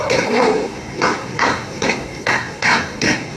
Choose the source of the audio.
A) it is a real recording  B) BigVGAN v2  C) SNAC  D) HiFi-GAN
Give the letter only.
C